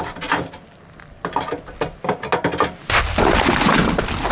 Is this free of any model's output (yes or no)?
yes